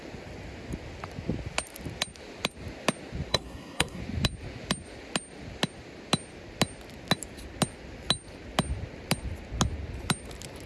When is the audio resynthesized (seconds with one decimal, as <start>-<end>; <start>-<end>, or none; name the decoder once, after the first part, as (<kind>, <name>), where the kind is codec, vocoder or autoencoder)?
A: 3.3-4.0 (codec, SNAC)